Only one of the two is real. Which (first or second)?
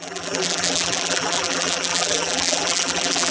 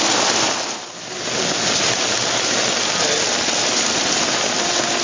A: second